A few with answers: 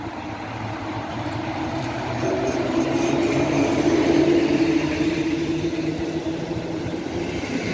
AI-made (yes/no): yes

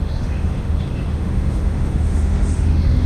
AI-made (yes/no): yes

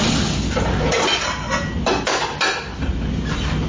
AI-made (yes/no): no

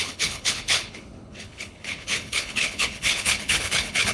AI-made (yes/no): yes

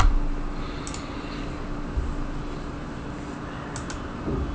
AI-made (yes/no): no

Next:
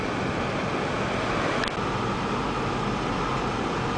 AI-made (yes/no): no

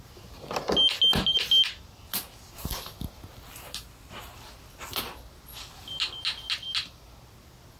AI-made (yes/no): no